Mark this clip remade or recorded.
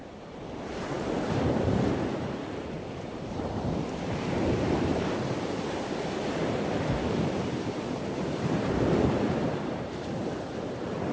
remade